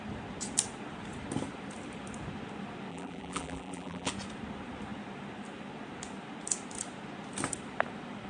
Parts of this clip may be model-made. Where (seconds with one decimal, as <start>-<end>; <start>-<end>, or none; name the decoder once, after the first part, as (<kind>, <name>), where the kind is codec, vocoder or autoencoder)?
2.9-4.1 (vocoder, BigVGAN v2)